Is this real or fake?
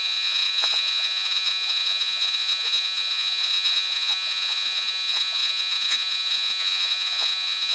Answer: fake